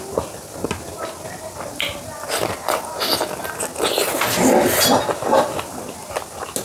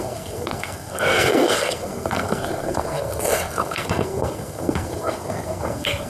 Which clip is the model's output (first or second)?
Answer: second